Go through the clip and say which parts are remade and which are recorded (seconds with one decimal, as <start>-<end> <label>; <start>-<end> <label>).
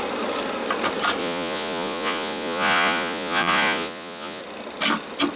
0.0-1.2 recorded; 1.2-4.4 remade; 4.4-5.4 recorded